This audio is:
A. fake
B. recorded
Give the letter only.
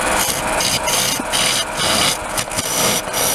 B